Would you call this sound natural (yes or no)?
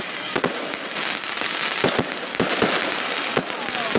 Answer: yes